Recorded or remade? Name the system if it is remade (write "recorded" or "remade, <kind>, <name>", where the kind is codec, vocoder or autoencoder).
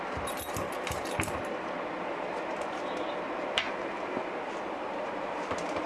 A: remade, vocoder, BigVGAN v2